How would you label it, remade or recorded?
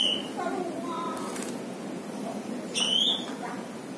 recorded